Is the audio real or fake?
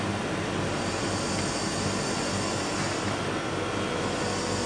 real